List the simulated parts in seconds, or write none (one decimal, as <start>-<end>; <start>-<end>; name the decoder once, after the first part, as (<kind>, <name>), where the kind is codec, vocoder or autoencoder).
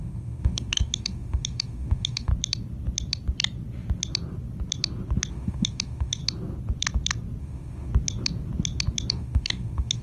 0.0-2.3 (autoencoder, DAC-VAE); 5.3-6.2; 7.4-7.9; 9.1-10.0